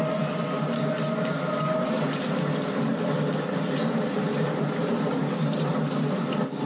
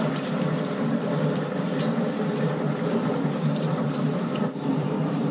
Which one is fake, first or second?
second